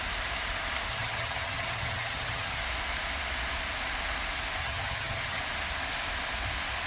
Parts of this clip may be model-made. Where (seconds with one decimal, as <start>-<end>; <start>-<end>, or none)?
0.9-2.6; 4.6-5.4